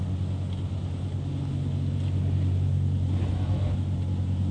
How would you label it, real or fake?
real